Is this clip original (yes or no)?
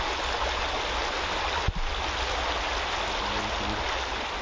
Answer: yes